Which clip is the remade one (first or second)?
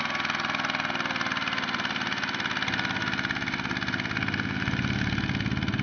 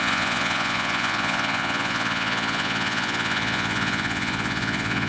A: second